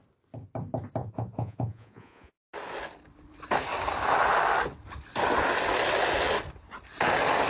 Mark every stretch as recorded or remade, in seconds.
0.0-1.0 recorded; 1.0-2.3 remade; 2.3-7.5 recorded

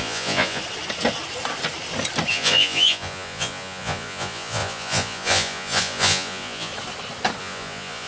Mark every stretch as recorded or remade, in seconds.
0.0-0.6 remade; 0.6-2.3 recorded; 2.3-6.7 remade; 6.7-7.4 recorded; 7.4-8.1 remade

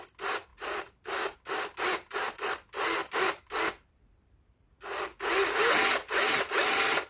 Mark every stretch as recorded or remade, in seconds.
0.0-7.1 recorded

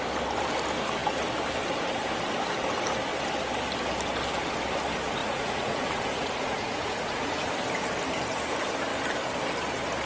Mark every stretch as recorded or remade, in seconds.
0.0-5.2 recorded; 5.2-7.5 remade; 7.5-10.1 recorded

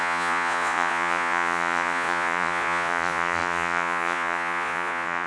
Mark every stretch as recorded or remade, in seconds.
0.0-5.3 remade

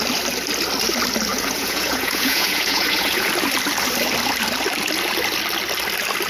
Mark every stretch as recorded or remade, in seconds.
0.0-1.3 recorded; 1.3-3.3 remade; 3.3-6.3 recorded

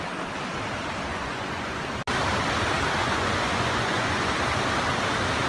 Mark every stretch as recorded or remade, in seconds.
0.0-1.1 recorded; 1.1-1.8 remade; 1.8-3.0 recorded; 3.0-4.3 remade; 4.3-5.5 recorded